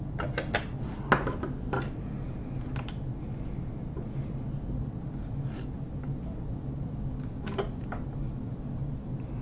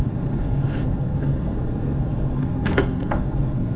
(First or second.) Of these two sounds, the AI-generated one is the second